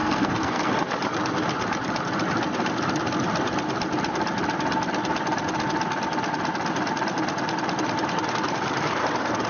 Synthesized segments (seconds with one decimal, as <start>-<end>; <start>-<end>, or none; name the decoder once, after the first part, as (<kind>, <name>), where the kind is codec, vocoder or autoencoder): 0.0-0.7 (codec, SNAC)